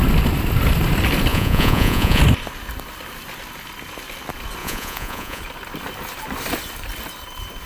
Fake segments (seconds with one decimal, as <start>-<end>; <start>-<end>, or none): 1.3-2.2; 4.6-5.4